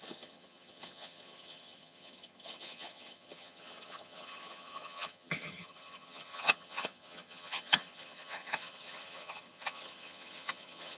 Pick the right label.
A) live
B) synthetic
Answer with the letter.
B